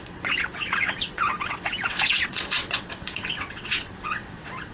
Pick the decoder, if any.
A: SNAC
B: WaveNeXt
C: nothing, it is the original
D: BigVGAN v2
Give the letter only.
B